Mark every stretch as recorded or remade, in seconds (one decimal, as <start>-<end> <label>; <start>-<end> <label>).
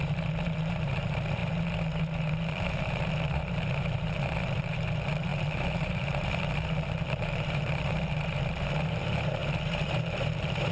0.0-10.7 remade